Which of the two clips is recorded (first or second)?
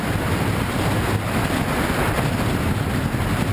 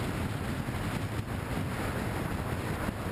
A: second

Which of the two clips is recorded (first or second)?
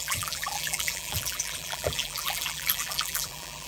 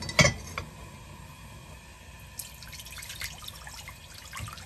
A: second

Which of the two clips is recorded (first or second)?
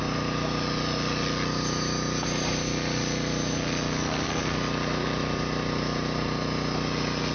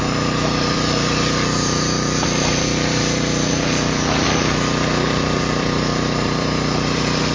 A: first